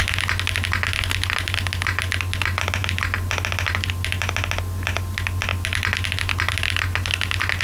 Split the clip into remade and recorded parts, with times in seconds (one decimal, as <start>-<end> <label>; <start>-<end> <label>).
0.0-7.6 recorded